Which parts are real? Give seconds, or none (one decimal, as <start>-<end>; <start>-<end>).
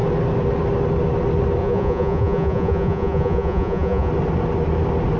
0.0-1.6; 4.1-5.2